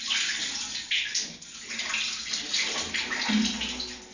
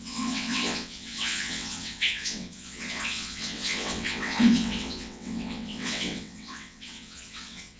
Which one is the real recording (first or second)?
first